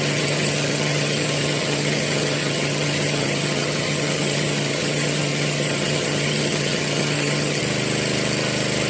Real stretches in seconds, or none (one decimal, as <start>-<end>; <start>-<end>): 7.6-8.9